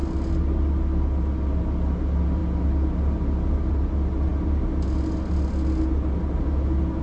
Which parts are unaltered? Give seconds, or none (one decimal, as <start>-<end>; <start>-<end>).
0.0-7.0